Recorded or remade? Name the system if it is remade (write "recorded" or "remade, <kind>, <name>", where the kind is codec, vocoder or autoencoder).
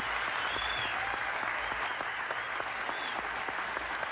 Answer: recorded